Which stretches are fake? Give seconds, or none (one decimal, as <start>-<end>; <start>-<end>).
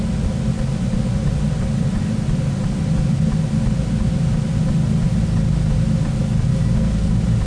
6.5-7.1